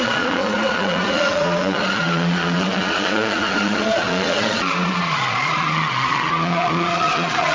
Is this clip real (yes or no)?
no